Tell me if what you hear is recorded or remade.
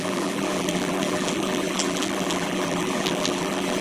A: remade